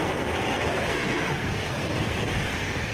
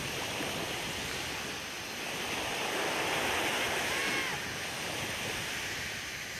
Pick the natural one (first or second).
second